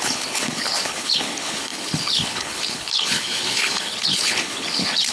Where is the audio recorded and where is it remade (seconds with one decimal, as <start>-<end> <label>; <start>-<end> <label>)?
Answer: 0.0-5.1 remade